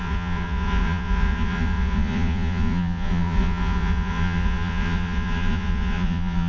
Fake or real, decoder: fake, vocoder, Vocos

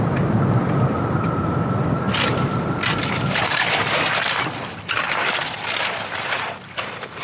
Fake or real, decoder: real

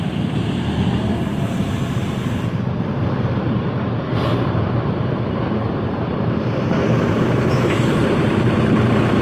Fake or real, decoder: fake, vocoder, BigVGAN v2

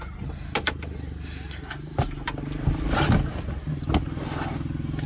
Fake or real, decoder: real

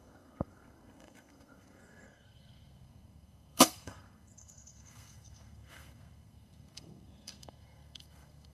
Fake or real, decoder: fake, codec, SNAC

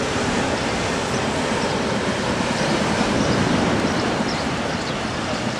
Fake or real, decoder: fake, vocoder, BigVGAN v2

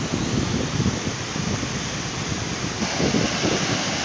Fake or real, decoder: real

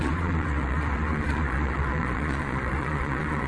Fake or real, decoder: fake, vocoder, Vocos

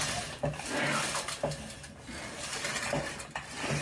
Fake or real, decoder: real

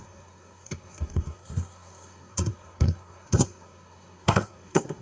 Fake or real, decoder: fake, codec, SNAC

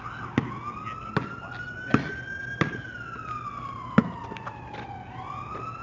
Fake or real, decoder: real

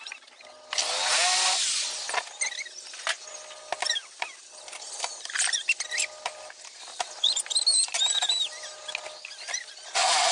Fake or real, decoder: real